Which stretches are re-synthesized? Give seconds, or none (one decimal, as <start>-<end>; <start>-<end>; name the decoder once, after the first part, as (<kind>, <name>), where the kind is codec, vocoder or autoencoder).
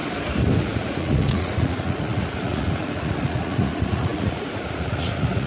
0.6-5.5 (vocoder, Vocos)